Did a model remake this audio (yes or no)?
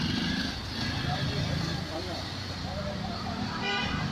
no